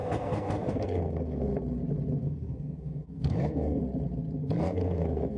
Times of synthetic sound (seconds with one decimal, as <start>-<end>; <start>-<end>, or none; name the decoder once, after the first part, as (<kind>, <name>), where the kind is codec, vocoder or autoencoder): 0.0-1.5 (codec, SNAC); 2.2-3.8; 4.6-5.4